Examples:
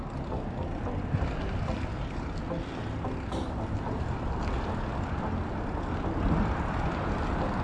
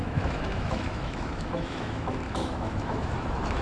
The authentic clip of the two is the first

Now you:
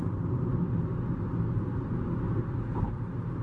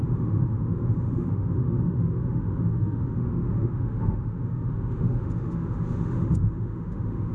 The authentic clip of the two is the first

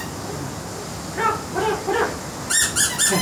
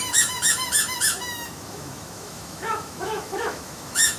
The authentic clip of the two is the first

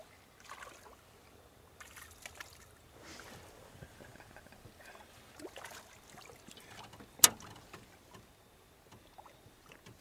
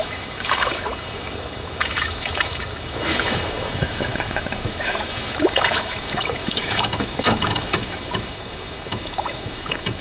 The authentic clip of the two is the first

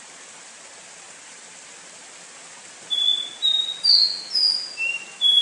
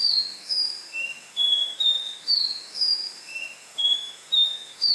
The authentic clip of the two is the first